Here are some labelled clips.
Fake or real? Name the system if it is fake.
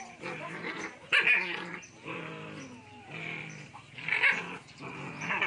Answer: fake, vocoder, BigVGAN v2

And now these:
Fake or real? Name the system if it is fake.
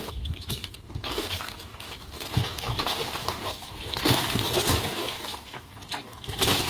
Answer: fake, codec, DAC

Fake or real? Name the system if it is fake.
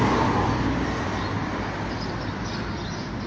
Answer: real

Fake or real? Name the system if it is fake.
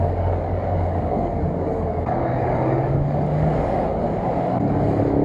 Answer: fake, codec, DAC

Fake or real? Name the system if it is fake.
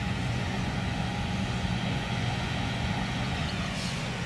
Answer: fake, vocoder, Vocos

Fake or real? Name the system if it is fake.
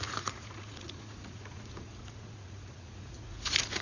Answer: fake, vocoder, Vocos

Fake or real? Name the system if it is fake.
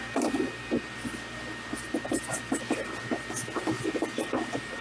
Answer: real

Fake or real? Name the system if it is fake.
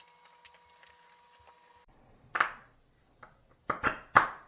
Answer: real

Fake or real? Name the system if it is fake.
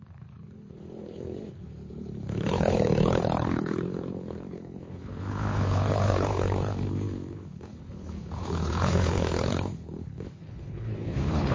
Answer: fake, codec, HILCodec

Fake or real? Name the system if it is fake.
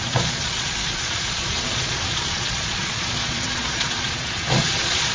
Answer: fake, vocoder, Vocos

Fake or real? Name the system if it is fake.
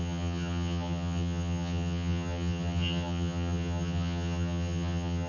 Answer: fake, vocoder, HiFi-GAN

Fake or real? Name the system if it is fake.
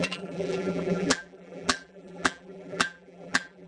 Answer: fake, vocoder, BigVGAN v2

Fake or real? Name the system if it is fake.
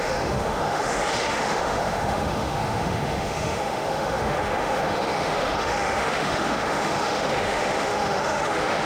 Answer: fake, autoencoder, DAC-VAE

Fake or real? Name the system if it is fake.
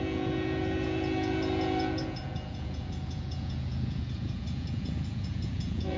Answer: fake, vocoder, Vocos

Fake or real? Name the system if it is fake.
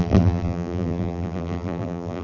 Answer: fake, vocoder, BigVGAN v2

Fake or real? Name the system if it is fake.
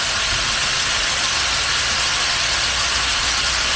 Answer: real